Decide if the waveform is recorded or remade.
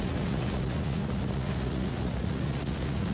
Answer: remade